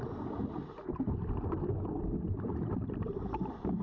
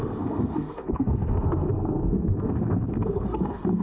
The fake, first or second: second